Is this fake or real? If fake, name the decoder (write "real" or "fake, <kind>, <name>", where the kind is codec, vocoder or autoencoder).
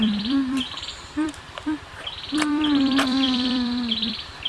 fake, vocoder, BigVGAN v2